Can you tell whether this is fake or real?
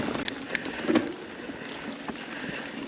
real